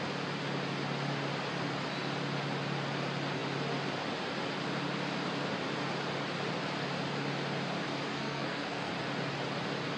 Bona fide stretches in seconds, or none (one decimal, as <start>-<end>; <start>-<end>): 0.0-8.1; 8.9-10.0